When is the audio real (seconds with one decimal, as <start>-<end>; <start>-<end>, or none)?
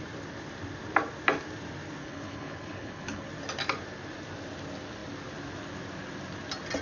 0.0-2.0; 3.3-6.8